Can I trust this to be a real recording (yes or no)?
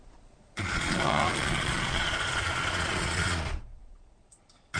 no